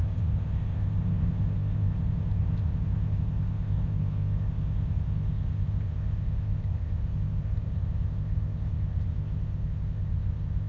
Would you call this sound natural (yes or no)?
no